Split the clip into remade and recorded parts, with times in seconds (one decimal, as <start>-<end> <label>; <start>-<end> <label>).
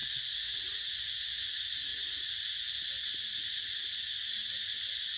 0.0-5.2 recorded